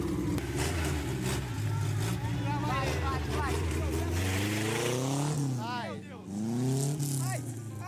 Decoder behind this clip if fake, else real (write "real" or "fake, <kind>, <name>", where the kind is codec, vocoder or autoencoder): real